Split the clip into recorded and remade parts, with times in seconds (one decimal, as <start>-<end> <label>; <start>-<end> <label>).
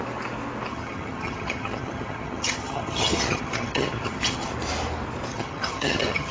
0.0-0.7 recorded; 0.7-4.5 remade; 4.5-5.3 recorded; 5.3-6.3 remade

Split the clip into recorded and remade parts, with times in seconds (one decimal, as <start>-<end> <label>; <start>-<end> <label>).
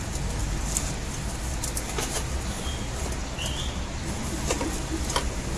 0.0-5.6 recorded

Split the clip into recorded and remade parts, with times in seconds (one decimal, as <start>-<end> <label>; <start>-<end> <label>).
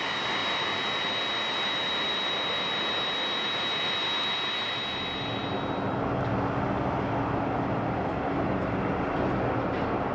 0.0-10.1 recorded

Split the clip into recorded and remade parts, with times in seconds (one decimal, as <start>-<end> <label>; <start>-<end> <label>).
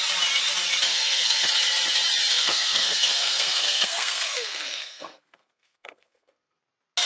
0.0-0.9 recorded; 0.9-1.4 remade; 1.4-2.3 recorded; 2.3-6.6 remade; 6.6-7.1 recorded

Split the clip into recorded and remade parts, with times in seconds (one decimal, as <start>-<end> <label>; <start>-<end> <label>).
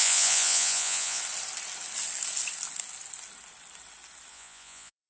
0.0-1.2 remade; 1.2-4.3 recorded; 4.3-5.1 remade